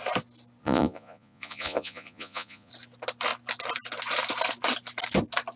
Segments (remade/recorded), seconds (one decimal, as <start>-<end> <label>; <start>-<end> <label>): 0.0-0.6 recorded; 0.6-2.7 remade; 2.7-5.6 recorded